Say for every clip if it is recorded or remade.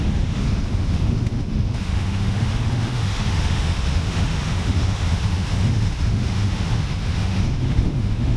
remade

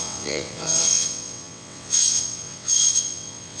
remade